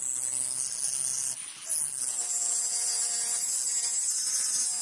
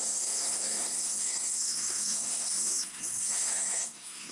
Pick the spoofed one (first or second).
second